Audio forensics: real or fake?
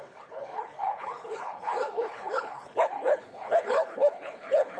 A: fake